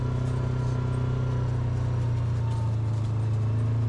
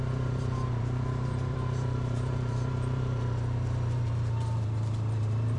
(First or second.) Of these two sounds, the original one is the first